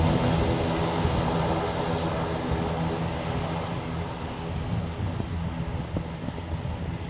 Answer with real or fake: real